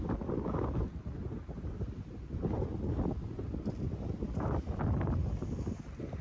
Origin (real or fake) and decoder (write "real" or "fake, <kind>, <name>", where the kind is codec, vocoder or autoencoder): real